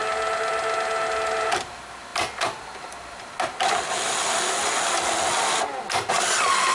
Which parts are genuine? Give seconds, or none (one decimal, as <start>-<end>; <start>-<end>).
0.0-6.7